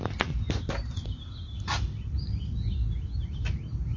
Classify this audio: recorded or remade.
recorded